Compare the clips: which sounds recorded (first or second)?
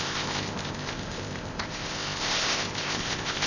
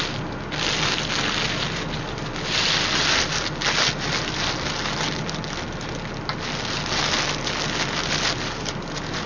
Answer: second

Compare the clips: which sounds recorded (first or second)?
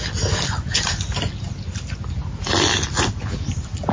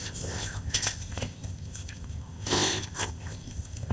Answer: first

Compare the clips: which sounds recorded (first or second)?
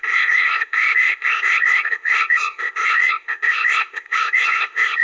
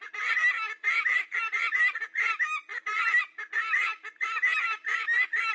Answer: second